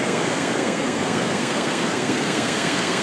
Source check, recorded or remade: remade